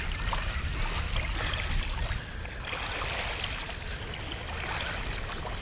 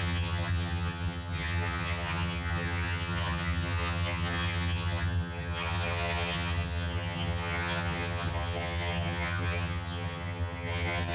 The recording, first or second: first